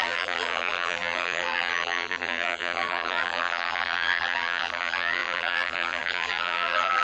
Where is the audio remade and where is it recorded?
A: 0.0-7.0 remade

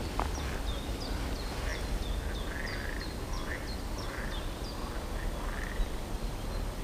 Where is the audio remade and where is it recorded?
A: 0.0-6.8 recorded

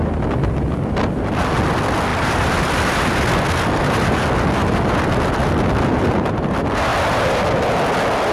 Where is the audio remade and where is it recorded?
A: 0.0-2.1 recorded; 2.1-2.7 remade; 2.7-6.9 recorded; 6.9-7.8 remade; 7.8-8.3 recorded